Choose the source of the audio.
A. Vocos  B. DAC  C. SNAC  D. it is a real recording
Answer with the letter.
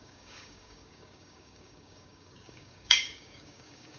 B